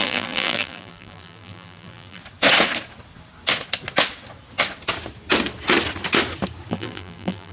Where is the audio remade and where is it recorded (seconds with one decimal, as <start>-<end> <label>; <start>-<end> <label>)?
0.0-2.2 remade; 2.2-6.7 recorded; 6.7-7.5 remade